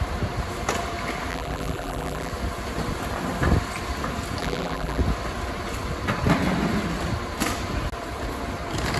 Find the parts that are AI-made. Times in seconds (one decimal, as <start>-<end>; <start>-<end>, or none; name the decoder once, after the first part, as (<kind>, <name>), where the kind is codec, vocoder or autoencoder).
1.3-2.3 (vocoder, BigVGAN v2); 4.4-5.0

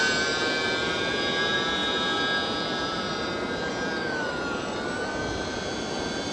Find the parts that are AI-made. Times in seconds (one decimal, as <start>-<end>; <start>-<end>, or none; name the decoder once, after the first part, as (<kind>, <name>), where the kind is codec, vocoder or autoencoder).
0.0-6.3 (vocoder, BigVGAN v2)